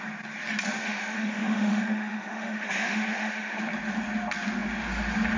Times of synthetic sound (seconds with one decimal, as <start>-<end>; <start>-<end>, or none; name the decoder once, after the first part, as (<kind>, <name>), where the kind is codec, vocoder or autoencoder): 0.8-3.6 (autoencoder, DAC-VAE)